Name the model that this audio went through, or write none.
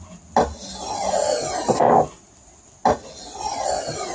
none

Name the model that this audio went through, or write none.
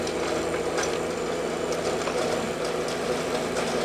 vocoder, BigVGAN v2